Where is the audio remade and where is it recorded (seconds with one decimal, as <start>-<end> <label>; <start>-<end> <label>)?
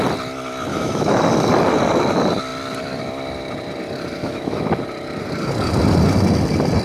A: 0.0-0.7 recorded; 0.7-1.2 remade; 1.2-4.2 recorded; 4.2-4.7 remade; 4.7-6.8 recorded